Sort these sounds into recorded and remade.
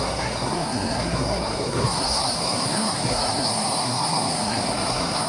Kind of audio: remade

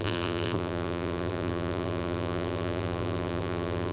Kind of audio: remade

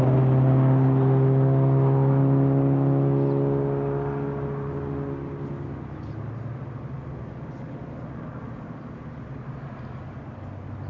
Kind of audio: recorded